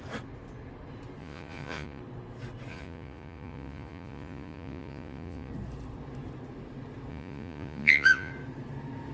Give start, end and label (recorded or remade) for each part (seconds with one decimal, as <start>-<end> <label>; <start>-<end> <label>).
0.0-1.2 recorded; 1.2-2.0 remade; 2.0-2.7 recorded; 2.7-5.5 remade; 5.5-7.1 recorded; 7.1-8.3 remade; 8.3-9.1 recorded